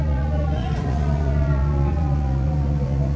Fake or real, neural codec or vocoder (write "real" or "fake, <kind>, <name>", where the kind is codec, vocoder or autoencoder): fake, vocoder, Vocos